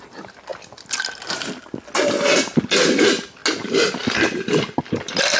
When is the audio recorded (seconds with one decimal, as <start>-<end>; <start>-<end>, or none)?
0.0-5.4